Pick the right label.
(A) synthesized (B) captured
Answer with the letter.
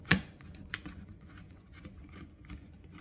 A